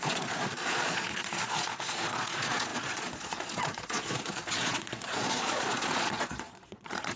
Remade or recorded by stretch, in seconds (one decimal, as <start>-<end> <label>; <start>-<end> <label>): 0.0-7.2 remade